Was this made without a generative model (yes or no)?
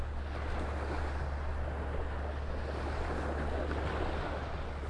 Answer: yes